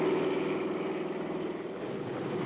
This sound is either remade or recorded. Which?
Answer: recorded